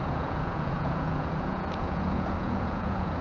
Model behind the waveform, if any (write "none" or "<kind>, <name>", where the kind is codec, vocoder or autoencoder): vocoder, Vocos